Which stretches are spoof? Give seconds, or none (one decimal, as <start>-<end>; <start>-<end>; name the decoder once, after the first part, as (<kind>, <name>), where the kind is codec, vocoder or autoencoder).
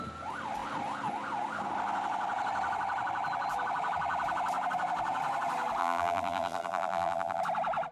5.8-7.4 (vocoder, BigVGAN v2)